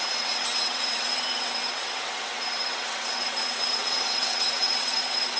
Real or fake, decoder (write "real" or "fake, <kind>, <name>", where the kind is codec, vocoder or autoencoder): fake, vocoder, WaveNeXt